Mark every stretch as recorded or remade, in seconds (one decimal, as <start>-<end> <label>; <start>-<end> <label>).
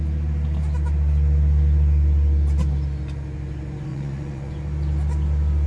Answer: 0.0-3.9 recorded; 3.9-4.5 remade; 4.5-5.7 recorded